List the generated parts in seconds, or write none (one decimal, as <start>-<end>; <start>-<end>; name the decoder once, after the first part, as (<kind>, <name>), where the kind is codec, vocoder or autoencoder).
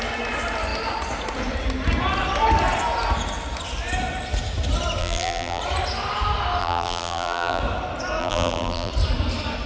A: 5.0-5.6 (vocoder, BigVGAN v2); 6.6-7.6; 8.2-8.9